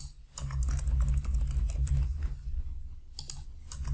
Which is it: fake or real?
real